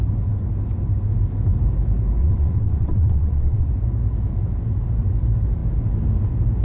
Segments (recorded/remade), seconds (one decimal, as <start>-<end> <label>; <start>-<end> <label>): 0.0-2.2 recorded; 2.2-3.7 remade; 3.7-6.6 recorded